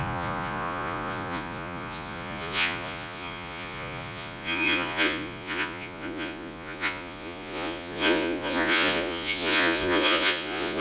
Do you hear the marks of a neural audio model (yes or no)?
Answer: yes